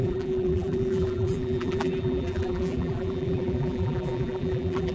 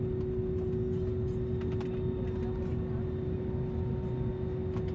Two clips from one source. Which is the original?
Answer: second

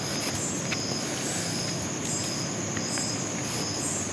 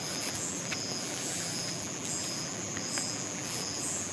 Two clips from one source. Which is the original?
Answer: first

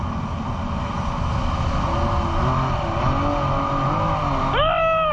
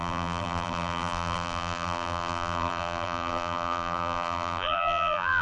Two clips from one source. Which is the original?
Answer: first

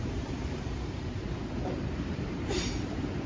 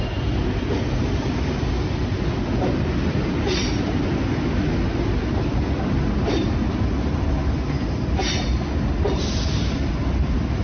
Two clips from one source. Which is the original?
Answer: second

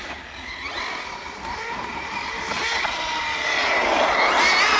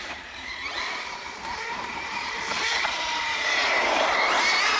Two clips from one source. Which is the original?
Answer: first